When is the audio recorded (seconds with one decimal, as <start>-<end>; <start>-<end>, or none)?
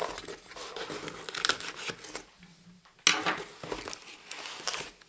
0.0-5.1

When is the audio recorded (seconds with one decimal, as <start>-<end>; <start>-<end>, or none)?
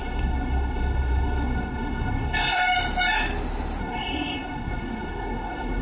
2.6-3.8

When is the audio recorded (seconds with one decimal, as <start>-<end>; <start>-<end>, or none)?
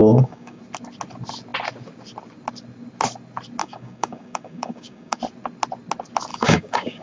0.6-3.6; 5.2-6.3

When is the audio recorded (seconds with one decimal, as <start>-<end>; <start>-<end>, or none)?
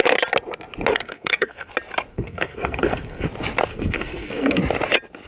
0.0-0.9; 1.7-2.1; 3.3-3.7; 4.6-5.3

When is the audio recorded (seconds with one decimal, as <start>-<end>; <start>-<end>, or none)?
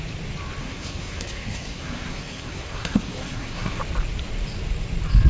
0.0-0.6; 3.8-5.3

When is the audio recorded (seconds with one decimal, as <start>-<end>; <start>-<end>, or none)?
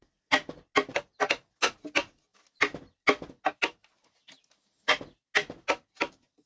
0.0-6.5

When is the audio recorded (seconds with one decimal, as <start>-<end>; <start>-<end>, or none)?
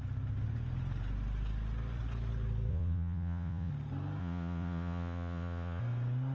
0.0-2.7; 3.7-4.2; 5.8-6.3